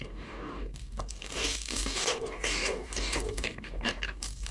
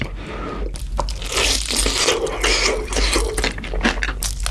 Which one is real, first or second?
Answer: second